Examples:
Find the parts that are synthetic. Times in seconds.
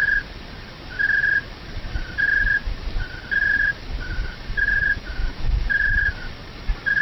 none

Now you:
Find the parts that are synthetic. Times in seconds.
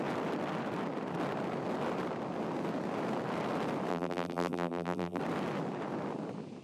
3.9-5.2 (vocoder, BigVGAN v2)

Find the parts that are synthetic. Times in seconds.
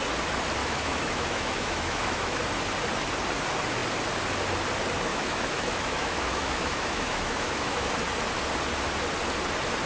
0.6-2.4 (autoencoder, DAC-VAE); 5.1-7.9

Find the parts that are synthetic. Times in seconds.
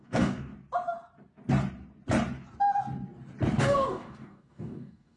0.0-0.5 (codec, DAC); 3.6-5.2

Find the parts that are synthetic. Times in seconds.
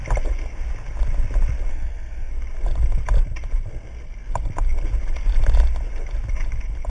1.7-2.3 (codec, SNAC)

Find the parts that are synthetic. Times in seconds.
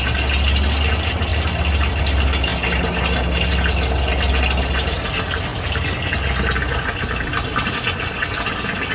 none